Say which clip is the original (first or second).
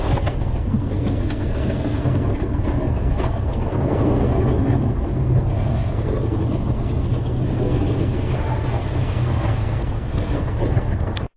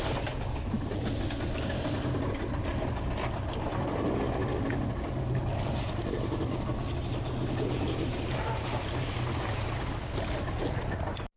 second